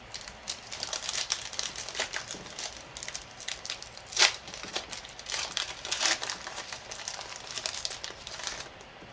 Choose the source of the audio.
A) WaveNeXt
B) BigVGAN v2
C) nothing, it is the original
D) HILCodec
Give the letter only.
B